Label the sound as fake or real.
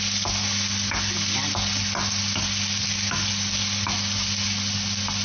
real